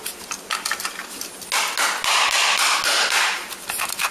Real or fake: real